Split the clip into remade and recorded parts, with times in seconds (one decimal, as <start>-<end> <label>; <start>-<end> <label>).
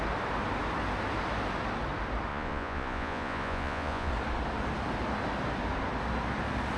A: 0.0-2.3 recorded; 2.3-4.1 remade; 4.1-6.8 recorded